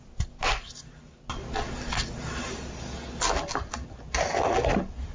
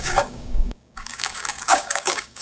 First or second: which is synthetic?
second